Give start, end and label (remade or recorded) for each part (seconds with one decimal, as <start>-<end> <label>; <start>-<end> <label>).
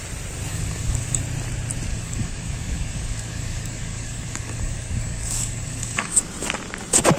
0.0-0.5 recorded; 0.5-1.2 remade; 1.2-1.9 recorded; 1.9-6.2 remade; 6.2-7.2 recorded